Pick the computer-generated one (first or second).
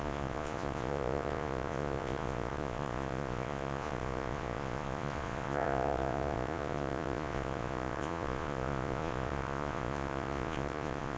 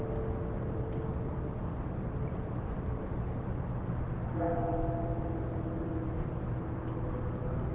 first